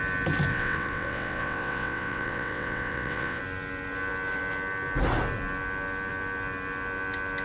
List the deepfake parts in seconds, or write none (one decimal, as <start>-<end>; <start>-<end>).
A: 0.5-3.4